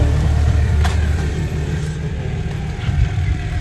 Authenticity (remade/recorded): remade